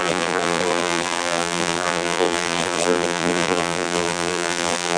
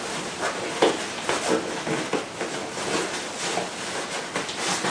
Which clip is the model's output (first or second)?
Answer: first